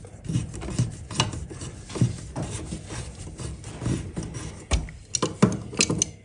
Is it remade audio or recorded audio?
recorded